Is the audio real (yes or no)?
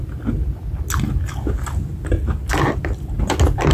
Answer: yes